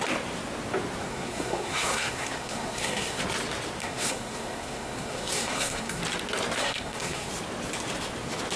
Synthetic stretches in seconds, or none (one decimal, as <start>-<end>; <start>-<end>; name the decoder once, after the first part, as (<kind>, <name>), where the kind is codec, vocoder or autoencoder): 1.0-3.2 (codec, SNAC); 3.8-6.0; 6.6-7.3